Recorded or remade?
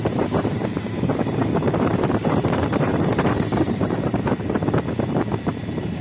remade